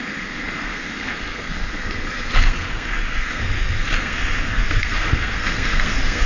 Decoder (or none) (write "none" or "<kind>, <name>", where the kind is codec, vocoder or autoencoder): codec, SNAC